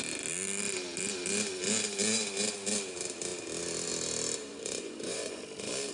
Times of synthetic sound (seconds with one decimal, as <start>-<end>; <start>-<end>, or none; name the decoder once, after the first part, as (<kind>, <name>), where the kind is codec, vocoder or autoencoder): 4.5-5.4 (vocoder, Vocos)